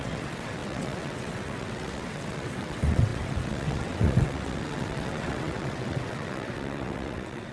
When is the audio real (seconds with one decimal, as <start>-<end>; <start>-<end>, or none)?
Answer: none